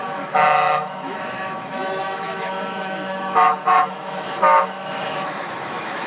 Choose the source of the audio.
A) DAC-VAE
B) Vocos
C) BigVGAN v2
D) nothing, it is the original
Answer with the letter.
A